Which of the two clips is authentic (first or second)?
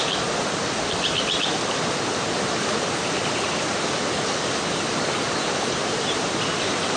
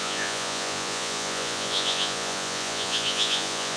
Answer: first